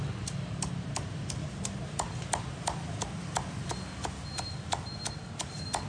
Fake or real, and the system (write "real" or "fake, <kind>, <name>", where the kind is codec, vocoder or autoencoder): real